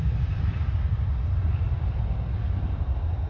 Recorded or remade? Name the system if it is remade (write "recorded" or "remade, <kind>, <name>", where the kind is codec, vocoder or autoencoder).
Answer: recorded